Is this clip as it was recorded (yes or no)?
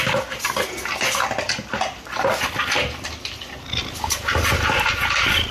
yes